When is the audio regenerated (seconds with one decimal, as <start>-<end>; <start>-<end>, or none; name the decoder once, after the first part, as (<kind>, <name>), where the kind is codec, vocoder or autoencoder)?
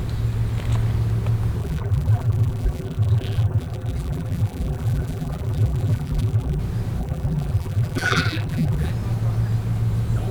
1.6-6.6 (vocoder, BigVGAN v2); 7.0-8.9